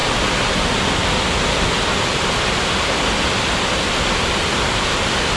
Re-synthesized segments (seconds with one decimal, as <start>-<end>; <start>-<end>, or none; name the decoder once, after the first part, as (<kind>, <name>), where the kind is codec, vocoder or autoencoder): none